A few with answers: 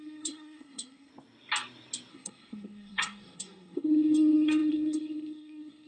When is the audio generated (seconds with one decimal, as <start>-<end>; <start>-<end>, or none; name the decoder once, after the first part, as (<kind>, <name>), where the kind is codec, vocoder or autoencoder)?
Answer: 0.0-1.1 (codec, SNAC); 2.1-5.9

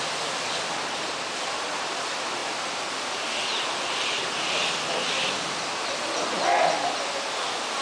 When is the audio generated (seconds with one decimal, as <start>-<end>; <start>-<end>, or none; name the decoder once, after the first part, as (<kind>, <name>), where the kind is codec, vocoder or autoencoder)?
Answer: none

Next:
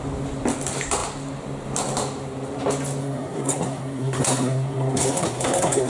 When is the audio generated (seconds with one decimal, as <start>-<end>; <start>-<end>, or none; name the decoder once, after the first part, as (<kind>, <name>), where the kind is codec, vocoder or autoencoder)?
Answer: 3.0-5.9 (codec, SNAC)

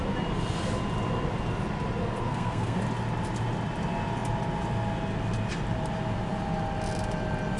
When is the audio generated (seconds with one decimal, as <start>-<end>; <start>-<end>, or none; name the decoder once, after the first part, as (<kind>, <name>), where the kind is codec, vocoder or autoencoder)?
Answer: 2.0-2.8 (codec, SNAC)

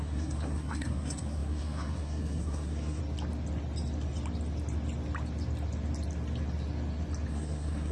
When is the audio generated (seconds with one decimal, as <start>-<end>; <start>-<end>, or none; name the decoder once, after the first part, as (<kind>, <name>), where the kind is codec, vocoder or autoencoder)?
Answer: 0.0-3.0 (codec, SNAC); 7.3-7.9

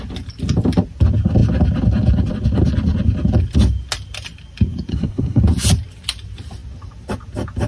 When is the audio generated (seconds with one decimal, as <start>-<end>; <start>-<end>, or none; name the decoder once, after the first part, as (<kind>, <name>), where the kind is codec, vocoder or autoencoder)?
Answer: 4.9-5.4 (codec, SNAC)

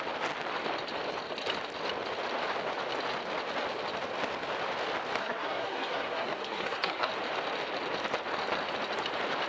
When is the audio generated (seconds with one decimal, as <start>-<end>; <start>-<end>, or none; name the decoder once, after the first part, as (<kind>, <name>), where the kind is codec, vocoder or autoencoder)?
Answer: 5.2-7.1 (codec, SNAC)